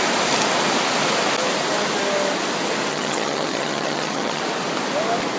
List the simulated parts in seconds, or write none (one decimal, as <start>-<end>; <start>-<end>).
2.9-4.4